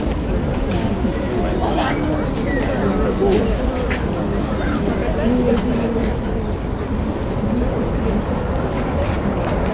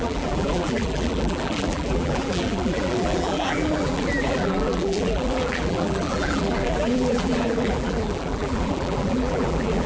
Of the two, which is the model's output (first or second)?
second